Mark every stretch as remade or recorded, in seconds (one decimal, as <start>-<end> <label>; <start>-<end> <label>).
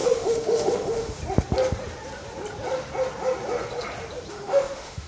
0.0-1.2 remade; 1.2-4.3 recorded; 4.3-5.1 remade